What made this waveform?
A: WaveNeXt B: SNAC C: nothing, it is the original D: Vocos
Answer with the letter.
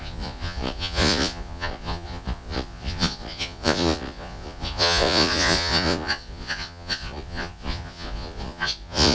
D